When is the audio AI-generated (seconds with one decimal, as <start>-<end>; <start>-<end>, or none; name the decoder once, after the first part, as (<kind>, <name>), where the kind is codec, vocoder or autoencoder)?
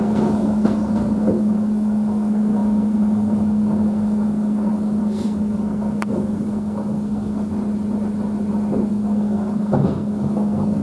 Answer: 0.0-7.5 (codec, SNAC); 8.9-10.8